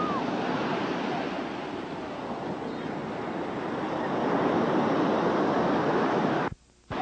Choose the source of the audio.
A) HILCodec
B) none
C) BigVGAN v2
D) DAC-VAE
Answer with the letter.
B